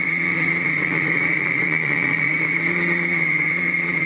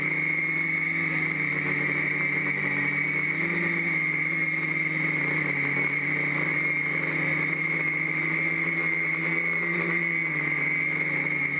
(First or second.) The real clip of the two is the second